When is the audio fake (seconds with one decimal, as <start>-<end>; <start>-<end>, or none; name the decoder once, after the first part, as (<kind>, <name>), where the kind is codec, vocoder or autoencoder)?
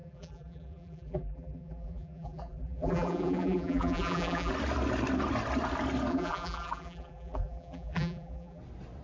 0.0-4.5 (vocoder, BigVGAN v2); 6.1-8.6